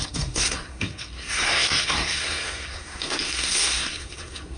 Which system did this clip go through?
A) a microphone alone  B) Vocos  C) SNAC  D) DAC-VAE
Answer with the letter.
C